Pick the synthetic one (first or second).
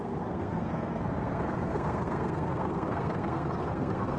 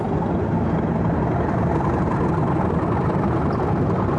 first